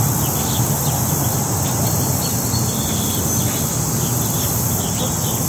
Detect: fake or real real